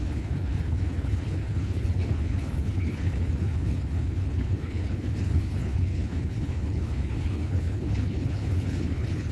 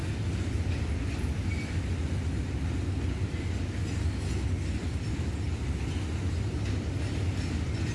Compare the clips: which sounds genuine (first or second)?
second